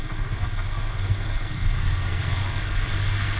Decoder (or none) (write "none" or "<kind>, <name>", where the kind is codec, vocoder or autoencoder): codec, SNAC